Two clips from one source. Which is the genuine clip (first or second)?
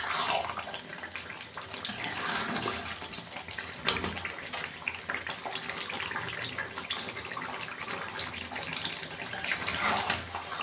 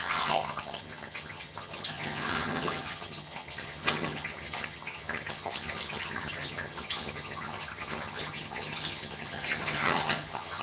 first